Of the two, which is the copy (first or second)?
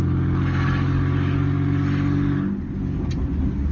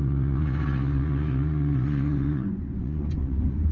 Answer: second